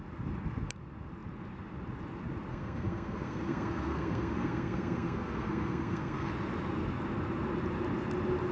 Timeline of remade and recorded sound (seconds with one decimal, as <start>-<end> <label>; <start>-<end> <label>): 0.0-2.5 recorded; 2.5-6.3 remade; 6.3-8.5 recorded